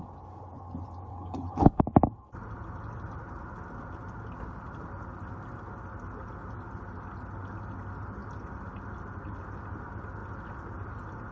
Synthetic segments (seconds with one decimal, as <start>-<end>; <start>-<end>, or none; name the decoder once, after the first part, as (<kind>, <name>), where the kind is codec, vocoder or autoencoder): 1.1-1.8 (codec, HILCodec)